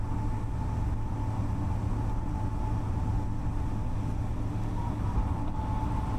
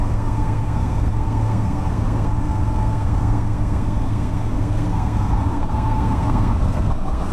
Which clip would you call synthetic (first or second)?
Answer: second